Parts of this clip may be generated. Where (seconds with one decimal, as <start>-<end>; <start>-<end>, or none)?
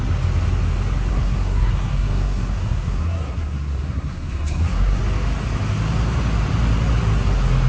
1.1-5.0